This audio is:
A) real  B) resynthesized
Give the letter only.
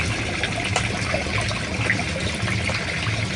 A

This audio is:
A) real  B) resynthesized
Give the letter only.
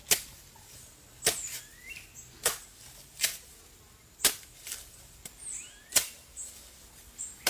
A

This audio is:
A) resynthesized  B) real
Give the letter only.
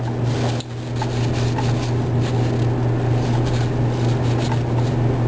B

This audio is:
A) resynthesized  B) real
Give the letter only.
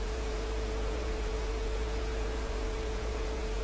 A